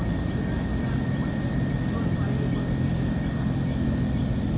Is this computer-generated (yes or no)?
yes